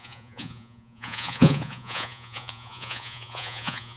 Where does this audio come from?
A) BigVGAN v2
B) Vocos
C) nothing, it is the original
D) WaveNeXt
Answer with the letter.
B